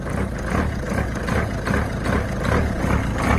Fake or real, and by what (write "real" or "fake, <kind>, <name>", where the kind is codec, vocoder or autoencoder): real